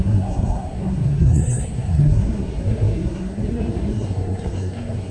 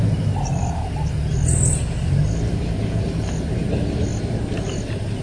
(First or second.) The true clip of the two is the second